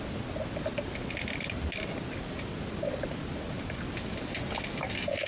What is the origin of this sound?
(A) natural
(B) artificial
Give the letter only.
A